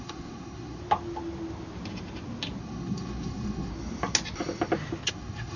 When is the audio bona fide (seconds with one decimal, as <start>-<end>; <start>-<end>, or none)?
0.8-2.6; 3.7-5.1